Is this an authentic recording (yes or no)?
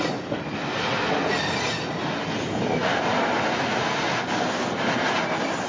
yes